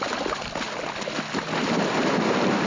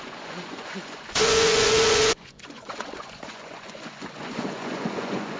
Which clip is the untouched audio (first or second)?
first